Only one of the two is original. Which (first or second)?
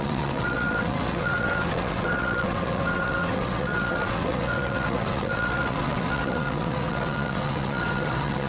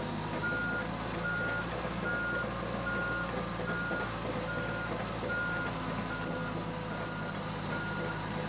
second